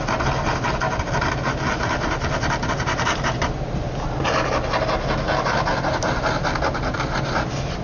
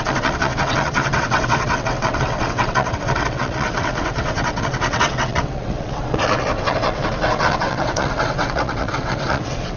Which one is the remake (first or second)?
second